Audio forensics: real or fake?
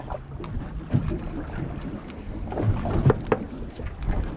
real